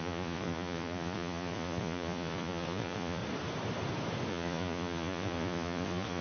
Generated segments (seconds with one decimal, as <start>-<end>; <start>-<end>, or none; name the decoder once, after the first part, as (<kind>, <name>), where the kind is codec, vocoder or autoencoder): 0.0-3.2 (vocoder, Vocos); 4.3-6.2